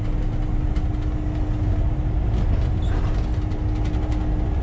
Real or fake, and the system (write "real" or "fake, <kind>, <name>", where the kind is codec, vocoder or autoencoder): real